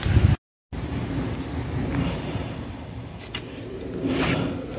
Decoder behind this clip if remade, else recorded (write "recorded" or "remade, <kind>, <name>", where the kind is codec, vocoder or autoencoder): recorded